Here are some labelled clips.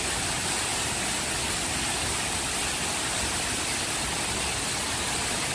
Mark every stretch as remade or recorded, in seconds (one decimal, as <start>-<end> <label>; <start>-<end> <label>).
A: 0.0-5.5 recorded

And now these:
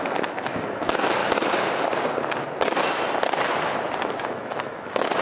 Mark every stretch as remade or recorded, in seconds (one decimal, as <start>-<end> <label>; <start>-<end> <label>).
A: 0.0-1.2 remade; 1.2-4.2 recorded; 4.2-5.2 remade

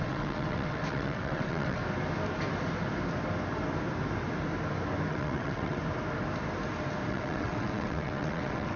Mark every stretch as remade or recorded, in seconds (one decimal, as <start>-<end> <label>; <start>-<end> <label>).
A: 0.0-1.8 remade; 1.8-5.1 recorded; 5.1-5.8 remade; 5.8-7.1 recorded; 7.1-8.8 remade

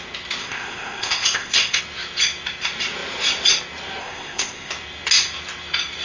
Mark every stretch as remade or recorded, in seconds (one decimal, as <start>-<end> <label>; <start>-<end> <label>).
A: 0.0-0.4 recorded; 0.4-1.8 remade; 1.8-4.0 recorded; 4.0-4.7 remade; 4.7-6.0 recorded

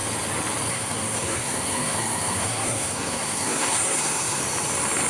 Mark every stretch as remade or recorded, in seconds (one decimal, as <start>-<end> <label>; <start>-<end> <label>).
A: 0.0-0.7 recorded; 0.7-4.4 remade; 4.4-5.1 recorded